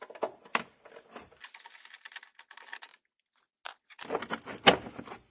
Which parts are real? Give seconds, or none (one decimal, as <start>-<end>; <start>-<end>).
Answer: 0.0-5.3